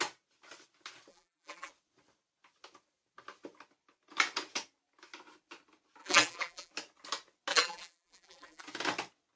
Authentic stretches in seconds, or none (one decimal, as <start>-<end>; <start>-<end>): 0.0-1.1; 1.7-6.0; 6.7-7.5; 8.6-9.4